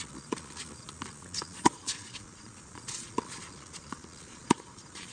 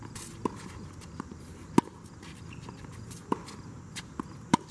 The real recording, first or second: second